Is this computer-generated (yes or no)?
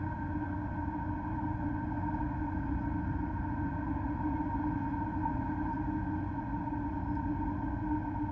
no